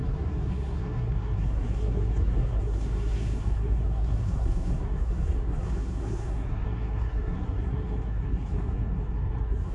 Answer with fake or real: fake